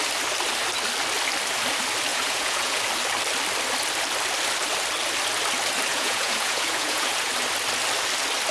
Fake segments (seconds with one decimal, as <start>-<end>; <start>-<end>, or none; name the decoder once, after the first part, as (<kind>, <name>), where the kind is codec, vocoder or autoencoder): 2.1-2.8 (vocoder, Vocos); 5.9-7.3